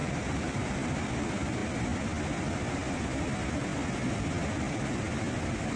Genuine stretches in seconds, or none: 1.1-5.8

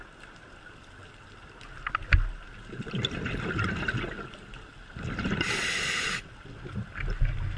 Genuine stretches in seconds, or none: 0.0-7.6